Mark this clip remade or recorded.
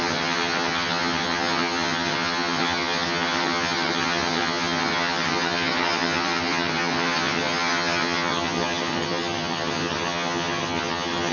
remade